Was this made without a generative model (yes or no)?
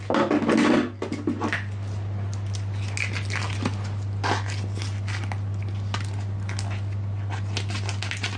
yes